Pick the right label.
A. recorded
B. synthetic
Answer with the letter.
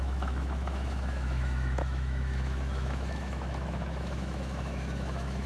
B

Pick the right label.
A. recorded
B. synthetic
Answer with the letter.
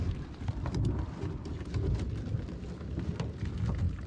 A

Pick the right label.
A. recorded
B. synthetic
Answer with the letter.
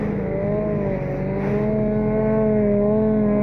A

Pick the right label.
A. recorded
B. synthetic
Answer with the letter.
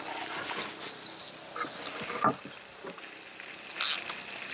A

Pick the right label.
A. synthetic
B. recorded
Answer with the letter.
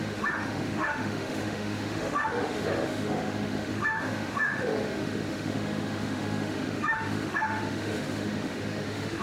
A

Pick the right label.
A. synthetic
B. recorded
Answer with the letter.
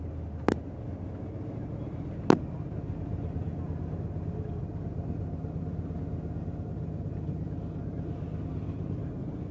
B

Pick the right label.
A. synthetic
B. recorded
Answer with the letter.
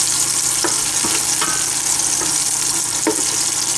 B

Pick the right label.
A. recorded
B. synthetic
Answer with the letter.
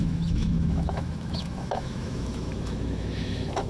B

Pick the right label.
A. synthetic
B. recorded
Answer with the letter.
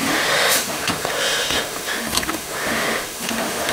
A